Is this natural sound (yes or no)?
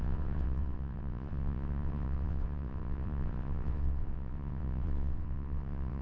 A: no